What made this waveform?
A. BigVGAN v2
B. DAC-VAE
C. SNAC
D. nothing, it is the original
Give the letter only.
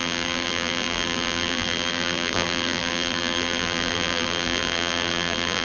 A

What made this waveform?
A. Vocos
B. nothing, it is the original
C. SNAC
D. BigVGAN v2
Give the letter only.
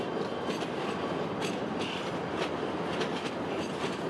B